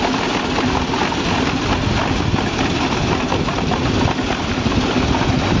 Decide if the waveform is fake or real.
real